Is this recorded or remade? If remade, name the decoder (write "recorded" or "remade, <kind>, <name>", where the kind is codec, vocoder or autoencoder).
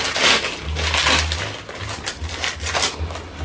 recorded